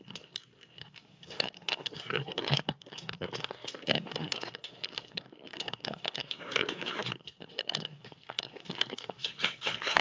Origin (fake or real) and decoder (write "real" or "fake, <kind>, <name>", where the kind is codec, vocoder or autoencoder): fake, codec, SNAC